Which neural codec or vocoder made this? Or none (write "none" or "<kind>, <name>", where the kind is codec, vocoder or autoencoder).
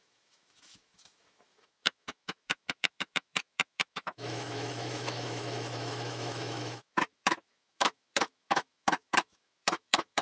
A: autoencoder, DAC-VAE